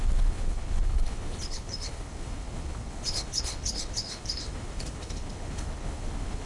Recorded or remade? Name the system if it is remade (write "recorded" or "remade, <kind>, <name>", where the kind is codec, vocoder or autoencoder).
remade, codec, HILCodec